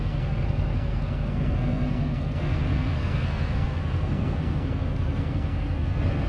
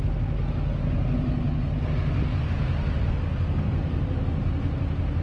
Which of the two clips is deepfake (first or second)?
first